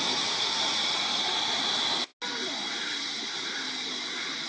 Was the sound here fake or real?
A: real